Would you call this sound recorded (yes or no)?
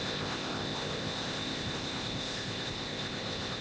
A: no